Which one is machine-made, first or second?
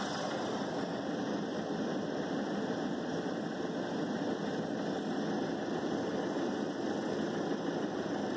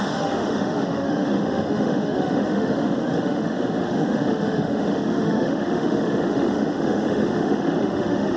second